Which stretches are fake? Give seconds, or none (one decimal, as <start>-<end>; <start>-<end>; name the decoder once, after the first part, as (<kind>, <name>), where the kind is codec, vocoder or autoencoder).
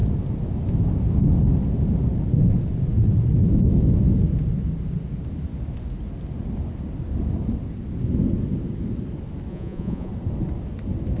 9.5-10.1 (vocoder, Vocos)